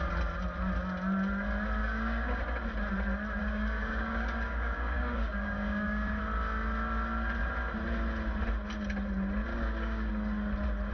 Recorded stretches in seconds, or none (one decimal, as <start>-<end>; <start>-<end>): 0.0-1.8; 2.4-3.4; 6.2-9.5; 10.1-10.9

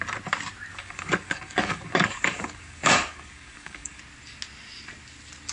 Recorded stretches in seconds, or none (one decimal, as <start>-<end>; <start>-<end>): 0.0-0.7; 4.0-5.5

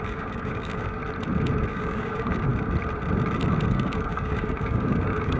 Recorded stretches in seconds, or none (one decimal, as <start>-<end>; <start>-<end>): 1.0-1.7; 2.5-3.7

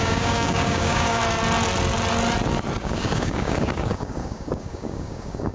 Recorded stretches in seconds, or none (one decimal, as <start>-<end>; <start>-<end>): 1.2-2.8

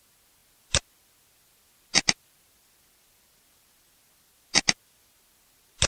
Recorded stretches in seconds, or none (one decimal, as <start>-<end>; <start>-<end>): 0.0-5.9

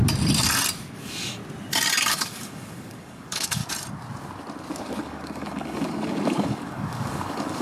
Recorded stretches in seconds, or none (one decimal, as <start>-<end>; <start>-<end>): 0.0-1.0; 1.4-2.1; 3.6-4.8